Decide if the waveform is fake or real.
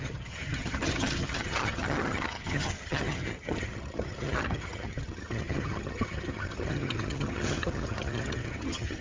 fake